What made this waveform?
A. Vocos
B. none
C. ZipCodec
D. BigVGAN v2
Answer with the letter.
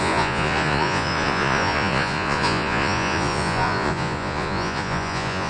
A